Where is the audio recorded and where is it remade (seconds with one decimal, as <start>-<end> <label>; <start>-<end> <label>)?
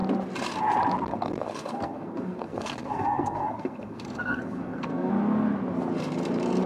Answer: 0.0-1.1 recorded; 1.1-5.1 remade; 5.1-6.7 recorded